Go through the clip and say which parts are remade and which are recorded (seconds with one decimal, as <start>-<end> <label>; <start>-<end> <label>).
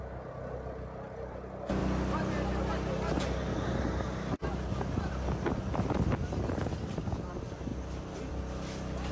0.0-9.1 recorded